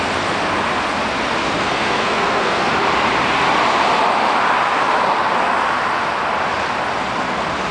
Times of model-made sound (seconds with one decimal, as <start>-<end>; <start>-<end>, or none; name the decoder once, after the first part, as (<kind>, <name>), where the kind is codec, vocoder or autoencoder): 1.6-2.7 (codec, SNAC)